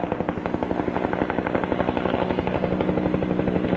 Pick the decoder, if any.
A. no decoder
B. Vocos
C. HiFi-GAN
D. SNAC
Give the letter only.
A